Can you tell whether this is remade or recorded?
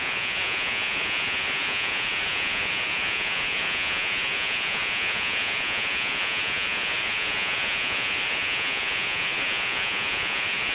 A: remade